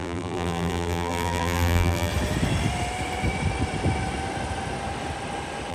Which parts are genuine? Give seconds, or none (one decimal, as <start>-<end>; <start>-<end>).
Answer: 2.1-5.7